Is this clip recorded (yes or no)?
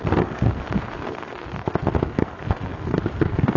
no